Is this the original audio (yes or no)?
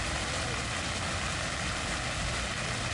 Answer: yes